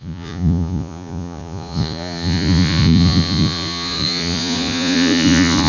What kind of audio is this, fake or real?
fake